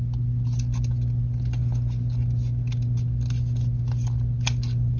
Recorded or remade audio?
recorded